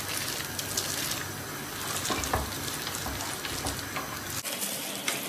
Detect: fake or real real